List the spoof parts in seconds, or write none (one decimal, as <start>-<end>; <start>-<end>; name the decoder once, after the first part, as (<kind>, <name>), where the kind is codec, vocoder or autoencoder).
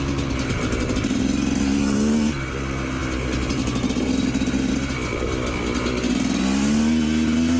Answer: none